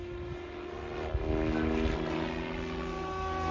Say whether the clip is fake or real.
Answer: real